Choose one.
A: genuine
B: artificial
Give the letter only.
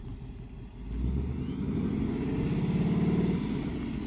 A